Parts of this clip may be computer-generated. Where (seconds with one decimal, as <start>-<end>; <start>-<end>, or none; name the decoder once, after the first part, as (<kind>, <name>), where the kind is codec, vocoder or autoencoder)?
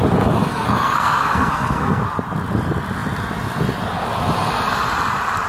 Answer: 0.5-2.0 (codec, SNAC)